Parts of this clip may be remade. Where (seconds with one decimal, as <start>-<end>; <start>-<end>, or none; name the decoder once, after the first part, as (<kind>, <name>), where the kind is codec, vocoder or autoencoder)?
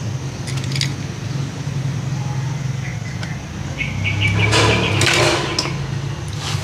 none